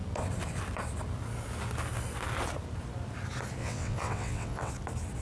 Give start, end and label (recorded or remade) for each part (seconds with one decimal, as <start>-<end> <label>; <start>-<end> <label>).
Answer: 0.0-3.6 recorded; 3.6-4.7 remade; 4.7-5.2 recorded